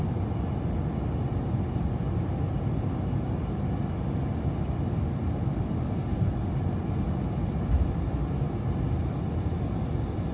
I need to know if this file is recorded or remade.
recorded